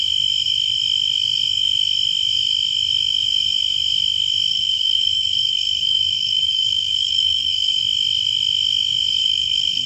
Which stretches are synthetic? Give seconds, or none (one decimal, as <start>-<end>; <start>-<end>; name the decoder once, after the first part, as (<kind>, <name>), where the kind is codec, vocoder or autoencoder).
4.5-7.8 (codec, SNAC); 9.2-9.9